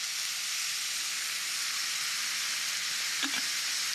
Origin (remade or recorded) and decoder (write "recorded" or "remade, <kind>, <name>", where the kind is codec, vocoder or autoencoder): recorded